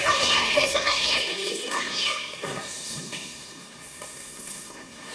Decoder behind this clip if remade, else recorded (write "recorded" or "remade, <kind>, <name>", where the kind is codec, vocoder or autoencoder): remade, codec, SNAC